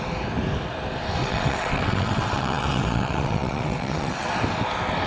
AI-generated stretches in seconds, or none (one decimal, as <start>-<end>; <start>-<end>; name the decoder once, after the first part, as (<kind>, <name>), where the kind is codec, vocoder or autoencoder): 1.2-4.3 (vocoder, WaveNeXt)